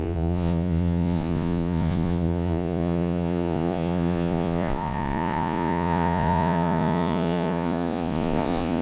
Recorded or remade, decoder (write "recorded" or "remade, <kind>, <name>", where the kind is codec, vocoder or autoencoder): remade, vocoder, Vocos